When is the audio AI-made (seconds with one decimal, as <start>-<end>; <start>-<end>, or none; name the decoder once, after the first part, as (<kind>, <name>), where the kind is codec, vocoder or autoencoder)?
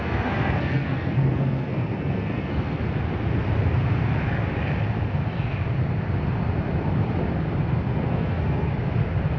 0.0-2.8 (codec, SNAC); 7.9-8.7